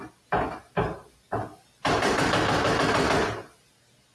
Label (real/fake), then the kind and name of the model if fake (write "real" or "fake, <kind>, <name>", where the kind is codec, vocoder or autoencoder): real